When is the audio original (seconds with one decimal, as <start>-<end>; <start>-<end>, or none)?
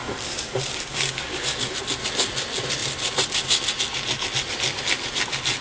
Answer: 1.7-5.6